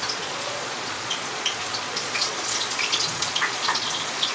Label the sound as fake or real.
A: fake